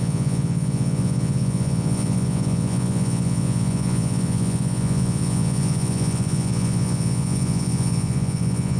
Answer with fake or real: fake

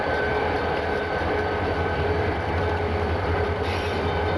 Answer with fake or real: fake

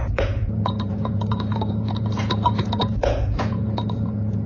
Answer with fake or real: fake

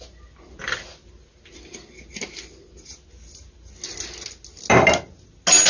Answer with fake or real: real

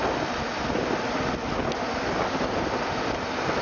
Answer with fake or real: real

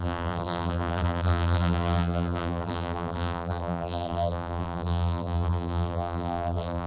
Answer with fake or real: fake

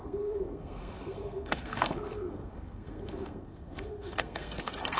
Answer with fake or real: fake